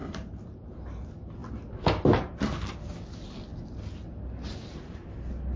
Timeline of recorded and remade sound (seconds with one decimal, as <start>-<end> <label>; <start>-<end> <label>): 0.0-5.6 recorded